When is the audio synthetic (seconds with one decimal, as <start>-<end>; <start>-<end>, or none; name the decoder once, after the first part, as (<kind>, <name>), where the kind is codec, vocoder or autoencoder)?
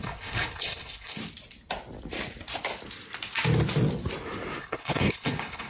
0.0-1.2 (codec, HILCodec); 4.6-5.7